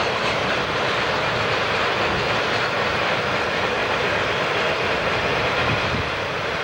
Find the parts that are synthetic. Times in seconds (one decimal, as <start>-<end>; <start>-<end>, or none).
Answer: 0.0-1.8; 3.1-6.6